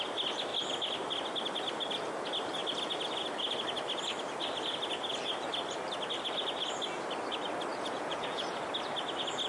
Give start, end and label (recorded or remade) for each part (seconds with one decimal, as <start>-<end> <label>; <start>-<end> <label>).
0.0-7.7 recorded; 7.7-8.6 remade; 8.6-9.5 recorded